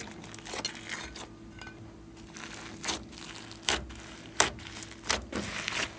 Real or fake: real